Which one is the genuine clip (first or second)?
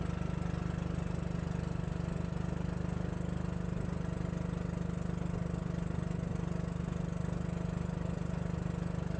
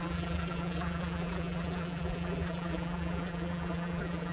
first